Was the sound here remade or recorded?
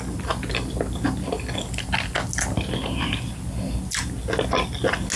recorded